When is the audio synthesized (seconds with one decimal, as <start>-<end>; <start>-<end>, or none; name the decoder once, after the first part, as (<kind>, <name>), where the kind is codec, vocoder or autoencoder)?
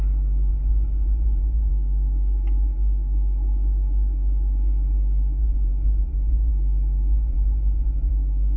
0.5-1.7 (vocoder, Vocos); 5.4-6.5; 7.1-8.1